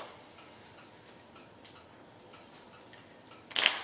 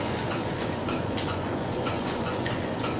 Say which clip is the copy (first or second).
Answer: second